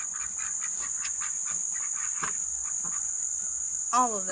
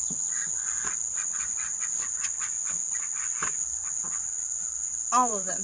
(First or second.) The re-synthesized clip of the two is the second